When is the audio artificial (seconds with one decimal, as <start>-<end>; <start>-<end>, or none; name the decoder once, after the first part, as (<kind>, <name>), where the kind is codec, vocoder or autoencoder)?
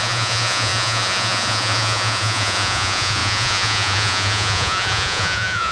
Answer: 0.0-5.7 (vocoder, Vocos)